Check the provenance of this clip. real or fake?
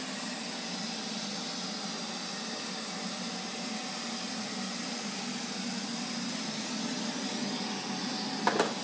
real